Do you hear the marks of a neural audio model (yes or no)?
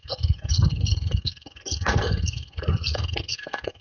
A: yes